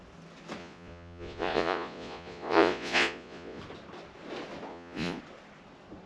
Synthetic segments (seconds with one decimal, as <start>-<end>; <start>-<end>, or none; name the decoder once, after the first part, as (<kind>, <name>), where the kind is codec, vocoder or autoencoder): 0.6-3.6 (vocoder, Vocos); 4.7-5.2